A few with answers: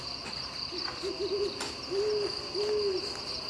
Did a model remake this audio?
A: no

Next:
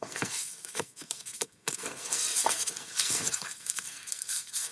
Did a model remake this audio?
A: yes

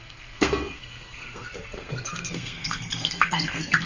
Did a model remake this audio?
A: yes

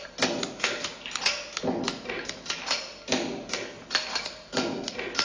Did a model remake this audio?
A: no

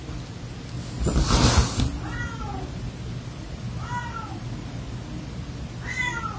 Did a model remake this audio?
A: no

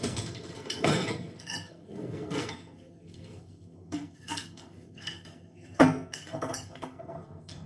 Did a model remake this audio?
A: yes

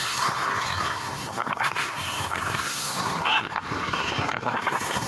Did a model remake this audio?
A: yes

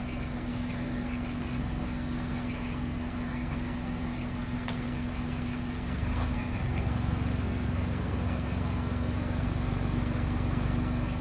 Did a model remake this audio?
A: yes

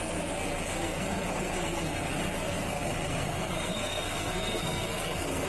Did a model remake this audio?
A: yes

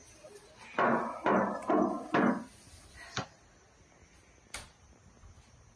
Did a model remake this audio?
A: no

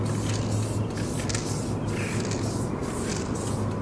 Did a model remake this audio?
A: no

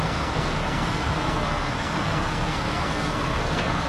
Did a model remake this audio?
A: yes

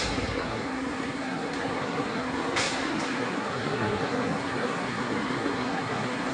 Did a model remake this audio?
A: yes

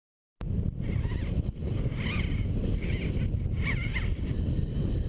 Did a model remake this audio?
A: no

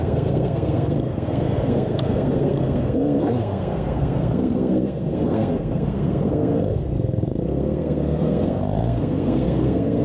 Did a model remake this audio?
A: yes